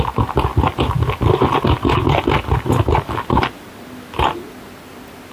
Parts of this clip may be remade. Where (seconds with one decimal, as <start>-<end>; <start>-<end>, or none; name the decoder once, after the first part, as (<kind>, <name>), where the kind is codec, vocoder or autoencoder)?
0.5-3.7 (vocoder, BigVGAN v2)